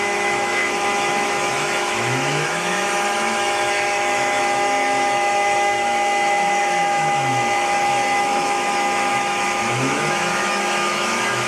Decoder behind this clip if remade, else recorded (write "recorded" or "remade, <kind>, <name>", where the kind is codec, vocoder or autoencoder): remade, autoencoder, DAC-VAE